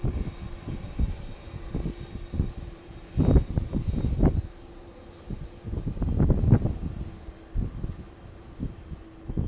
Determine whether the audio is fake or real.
real